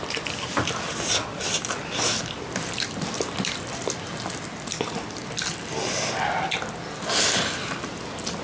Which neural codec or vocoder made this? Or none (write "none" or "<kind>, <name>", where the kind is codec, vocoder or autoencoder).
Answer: none